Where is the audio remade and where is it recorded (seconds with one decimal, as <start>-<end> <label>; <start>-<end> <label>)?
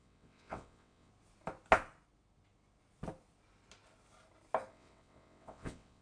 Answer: 0.0-1.1 remade; 1.1-4.7 recorded; 4.7-6.0 remade